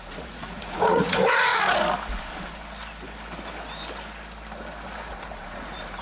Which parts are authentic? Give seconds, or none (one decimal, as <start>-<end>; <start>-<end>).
1.5-5.1